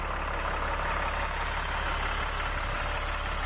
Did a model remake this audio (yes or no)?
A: no